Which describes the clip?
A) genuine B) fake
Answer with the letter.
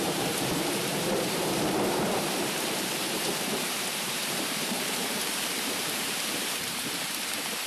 B